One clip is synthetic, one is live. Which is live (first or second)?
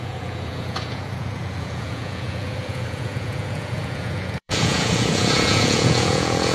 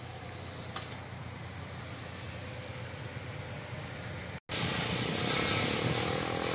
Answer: second